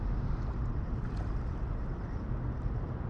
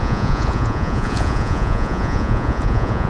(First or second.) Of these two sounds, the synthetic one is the second